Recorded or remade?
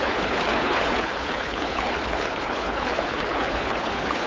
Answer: remade